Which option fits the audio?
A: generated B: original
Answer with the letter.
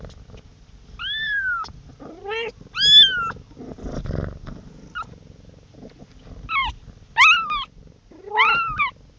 B